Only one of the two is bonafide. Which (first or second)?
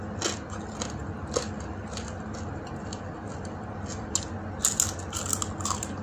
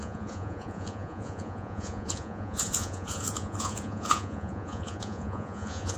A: first